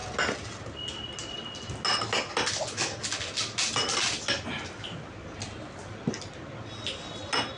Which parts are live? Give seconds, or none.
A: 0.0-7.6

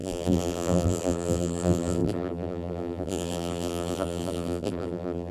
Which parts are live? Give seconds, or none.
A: none